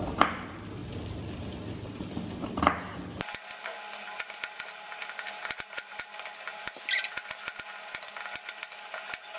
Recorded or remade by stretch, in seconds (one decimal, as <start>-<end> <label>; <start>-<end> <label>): 0.0-9.4 recorded